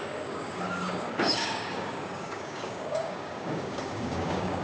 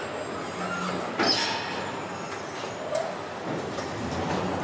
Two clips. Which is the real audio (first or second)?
second